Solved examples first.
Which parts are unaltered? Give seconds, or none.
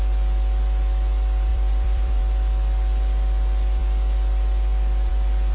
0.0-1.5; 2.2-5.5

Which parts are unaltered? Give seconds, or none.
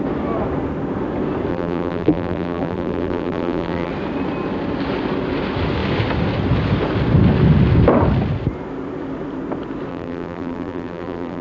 0.0-1.5; 3.9-9.9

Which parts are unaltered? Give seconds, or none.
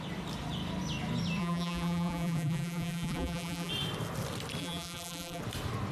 0.0-1.4; 3.7-4.6; 5.4-5.9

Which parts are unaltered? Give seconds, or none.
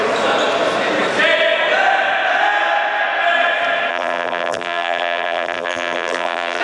0.0-3.9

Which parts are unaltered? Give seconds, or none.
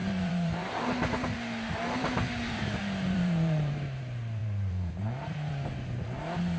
4.0-4.4; 5.5-6.6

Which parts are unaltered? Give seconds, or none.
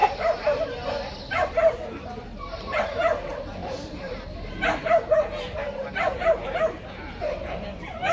none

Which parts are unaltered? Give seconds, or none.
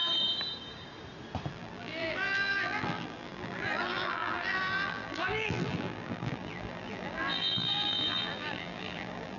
0.0-1.5